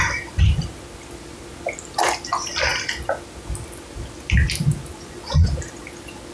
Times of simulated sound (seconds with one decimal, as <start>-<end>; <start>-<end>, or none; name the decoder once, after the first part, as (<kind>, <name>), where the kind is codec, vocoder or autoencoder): 4.9-5.5 (vocoder, Vocos)